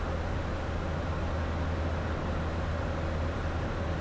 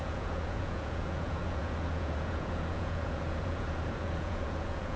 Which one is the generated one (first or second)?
second